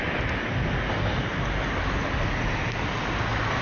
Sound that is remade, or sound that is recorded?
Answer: recorded